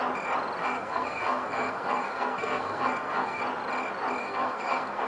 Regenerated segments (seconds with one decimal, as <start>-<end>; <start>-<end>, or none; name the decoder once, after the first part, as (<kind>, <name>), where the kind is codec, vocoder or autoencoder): 0.6-3.4 (codec, SNAC); 4.2-5.1